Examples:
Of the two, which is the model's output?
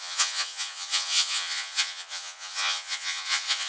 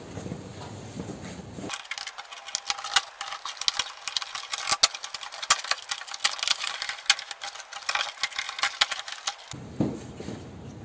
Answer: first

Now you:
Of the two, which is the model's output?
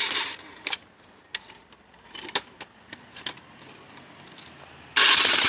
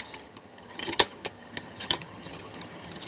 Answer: second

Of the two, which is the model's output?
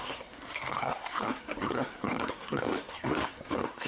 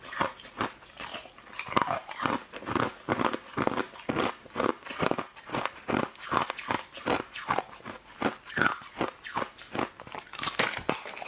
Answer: first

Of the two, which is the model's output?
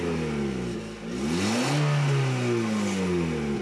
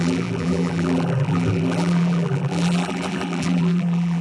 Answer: second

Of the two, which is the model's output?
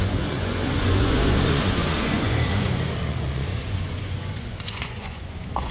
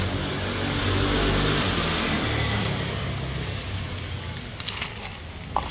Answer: first